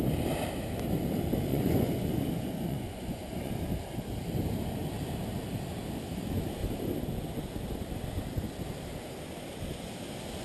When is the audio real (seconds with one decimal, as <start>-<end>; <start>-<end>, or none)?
0.0-1.5; 3.5-10.4